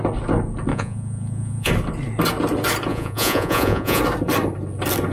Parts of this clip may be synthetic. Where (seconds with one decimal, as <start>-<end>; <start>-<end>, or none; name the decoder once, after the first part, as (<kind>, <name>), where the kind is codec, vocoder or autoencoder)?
0.7-1.7 (vocoder, Vocos); 2.9-4.0